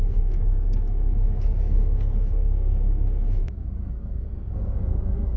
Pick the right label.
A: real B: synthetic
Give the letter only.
B